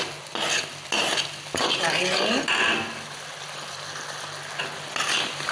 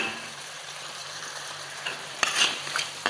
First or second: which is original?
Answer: first